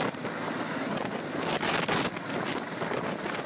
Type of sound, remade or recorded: recorded